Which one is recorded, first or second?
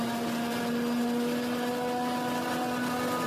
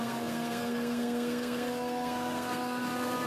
first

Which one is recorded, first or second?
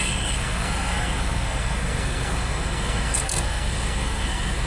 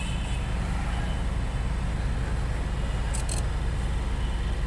second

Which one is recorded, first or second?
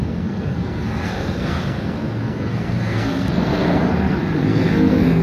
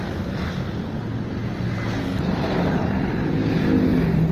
second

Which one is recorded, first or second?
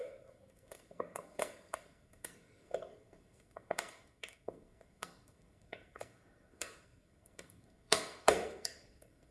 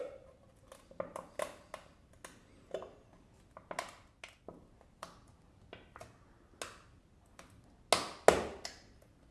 second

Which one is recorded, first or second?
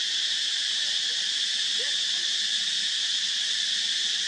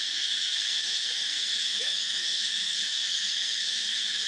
first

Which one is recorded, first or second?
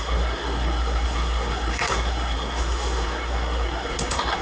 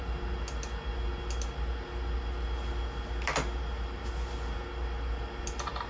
second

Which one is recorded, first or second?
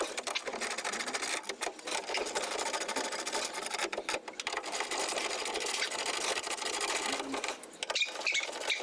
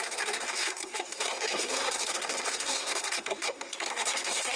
first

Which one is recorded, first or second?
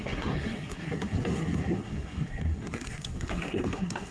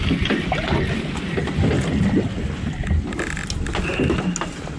second